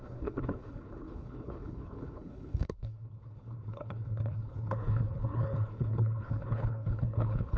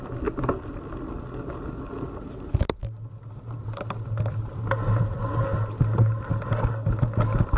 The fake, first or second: first